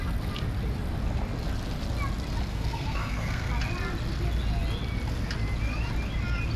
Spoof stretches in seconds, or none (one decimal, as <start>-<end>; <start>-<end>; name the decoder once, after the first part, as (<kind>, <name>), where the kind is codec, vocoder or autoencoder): 2.5-3.5 (codec, SNAC)

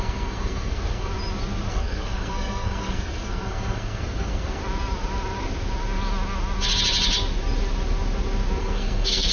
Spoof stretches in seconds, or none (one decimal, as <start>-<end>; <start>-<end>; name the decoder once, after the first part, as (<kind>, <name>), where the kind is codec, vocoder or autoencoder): 0.0-1.1 (codec, SNAC); 1.7-4.6; 8.6-9.3

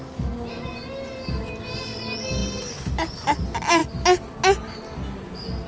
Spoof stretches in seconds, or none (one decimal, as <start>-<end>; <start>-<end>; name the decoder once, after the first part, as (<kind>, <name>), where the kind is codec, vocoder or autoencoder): none

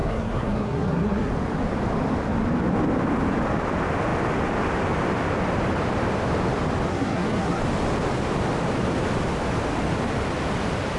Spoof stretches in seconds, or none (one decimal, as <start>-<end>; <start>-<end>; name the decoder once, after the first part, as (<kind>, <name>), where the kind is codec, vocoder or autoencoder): 0.0-1.3 (codec, SNAC); 6.9-7.6

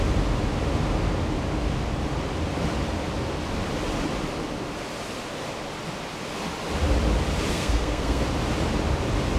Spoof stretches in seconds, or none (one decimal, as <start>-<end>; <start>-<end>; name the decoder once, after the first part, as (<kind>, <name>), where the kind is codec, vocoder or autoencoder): 7.5-8.2 (codec, SNAC)

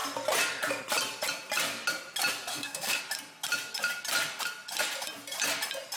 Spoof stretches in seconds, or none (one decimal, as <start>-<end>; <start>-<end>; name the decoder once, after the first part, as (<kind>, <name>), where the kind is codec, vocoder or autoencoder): 2.5-3.0 (codec, SNAC)

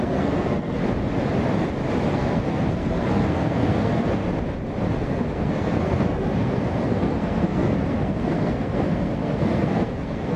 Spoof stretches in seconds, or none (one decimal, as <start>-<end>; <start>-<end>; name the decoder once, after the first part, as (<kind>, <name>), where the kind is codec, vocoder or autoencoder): 0.0-0.8 (codec, SNAC); 2.1-4.2; 5.0-10.4